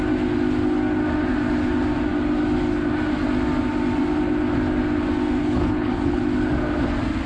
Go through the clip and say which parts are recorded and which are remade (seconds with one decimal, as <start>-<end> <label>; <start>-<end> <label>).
0.0-5.4 recorded; 5.4-6.2 remade; 6.2-7.3 recorded